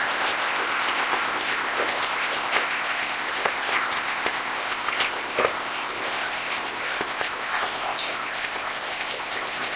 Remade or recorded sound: remade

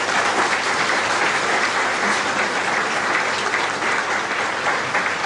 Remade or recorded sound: recorded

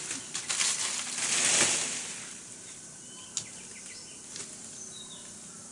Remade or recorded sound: recorded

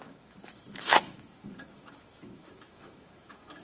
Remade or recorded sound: remade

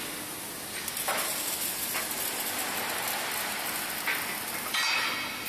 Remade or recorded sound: recorded